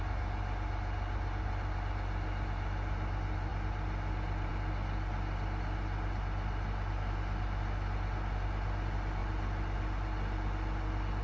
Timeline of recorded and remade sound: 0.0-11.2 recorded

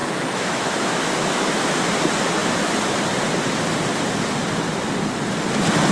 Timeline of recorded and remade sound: 0.0-1.7 remade; 1.7-5.9 recorded

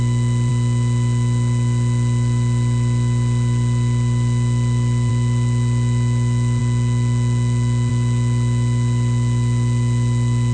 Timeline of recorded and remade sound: 0.0-10.5 recorded

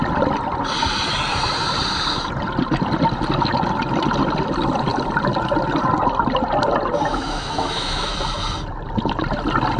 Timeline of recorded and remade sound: 0.0-7.1 recorded; 7.1-8.1 remade; 8.1-9.8 recorded

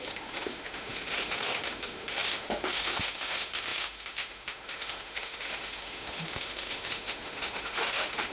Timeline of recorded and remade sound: 0.0-8.3 remade

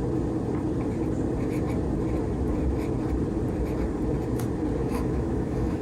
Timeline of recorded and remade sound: 0.0-4.8 recorded; 4.8-5.8 remade